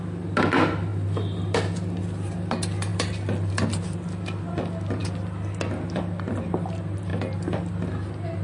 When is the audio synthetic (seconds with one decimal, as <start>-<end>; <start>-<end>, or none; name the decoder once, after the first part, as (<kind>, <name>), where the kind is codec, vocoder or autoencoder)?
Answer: 2.9-3.5 (vocoder, BigVGAN v2)